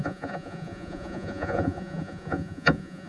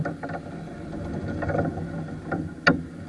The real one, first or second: second